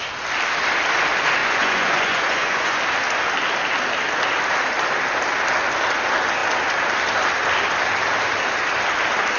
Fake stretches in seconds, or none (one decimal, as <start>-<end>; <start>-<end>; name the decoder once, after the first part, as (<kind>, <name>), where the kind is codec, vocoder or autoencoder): 1.4-2.8 (vocoder, Vocos)